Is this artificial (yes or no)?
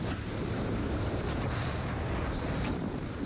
no